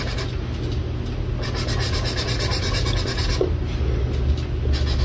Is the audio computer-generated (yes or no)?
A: no